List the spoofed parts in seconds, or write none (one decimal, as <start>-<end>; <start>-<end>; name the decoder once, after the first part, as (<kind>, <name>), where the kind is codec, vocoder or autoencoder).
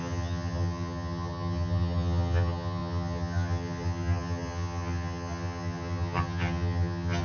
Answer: 0.0-7.2 (vocoder, HiFi-GAN)